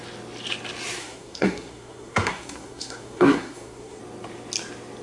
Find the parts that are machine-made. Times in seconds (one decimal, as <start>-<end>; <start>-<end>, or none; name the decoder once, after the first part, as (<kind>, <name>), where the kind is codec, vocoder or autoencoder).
1.0-4.0 (codec, SNAC)